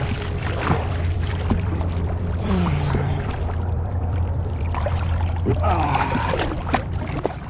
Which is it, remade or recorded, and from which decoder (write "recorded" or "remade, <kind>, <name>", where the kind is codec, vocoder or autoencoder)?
remade, vocoder, BigVGAN v2